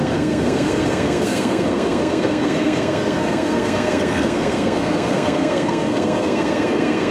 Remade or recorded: remade